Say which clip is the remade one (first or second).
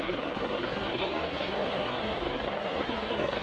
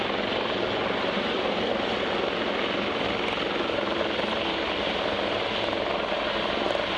first